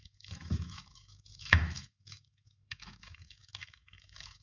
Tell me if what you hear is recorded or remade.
remade